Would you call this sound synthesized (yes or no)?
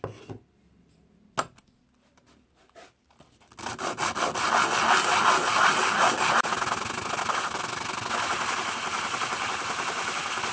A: no